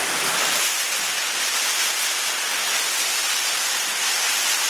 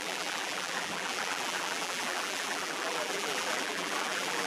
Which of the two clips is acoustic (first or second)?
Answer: first